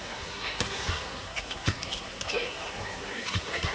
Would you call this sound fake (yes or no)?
yes